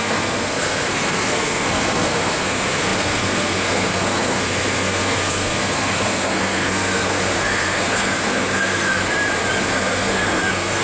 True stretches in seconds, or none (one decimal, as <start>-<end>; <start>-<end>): 9.0-9.7

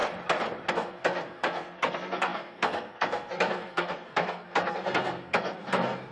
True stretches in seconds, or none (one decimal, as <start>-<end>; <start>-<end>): 0.0-0.7

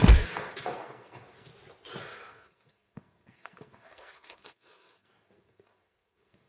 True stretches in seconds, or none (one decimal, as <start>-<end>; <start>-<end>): 1.5-2.0